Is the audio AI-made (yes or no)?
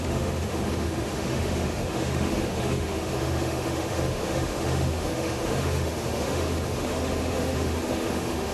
yes